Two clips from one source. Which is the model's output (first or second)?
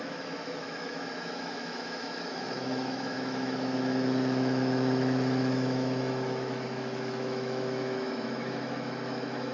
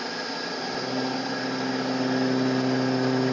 first